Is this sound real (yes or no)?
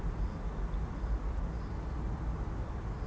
yes